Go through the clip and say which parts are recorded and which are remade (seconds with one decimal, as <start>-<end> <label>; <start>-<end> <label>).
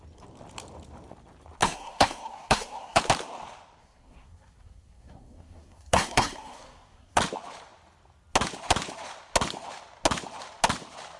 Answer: 0.0-1.6 recorded; 1.6-3.0 remade; 3.0-3.8 recorded; 3.8-7.2 remade; 7.2-11.2 recorded